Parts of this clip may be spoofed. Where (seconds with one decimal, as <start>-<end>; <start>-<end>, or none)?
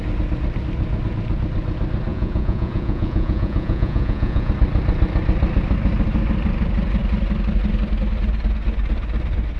2.1-4.5